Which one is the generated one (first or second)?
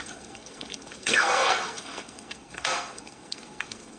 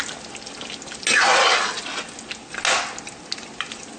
first